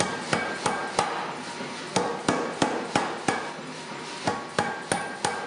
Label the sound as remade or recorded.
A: recorded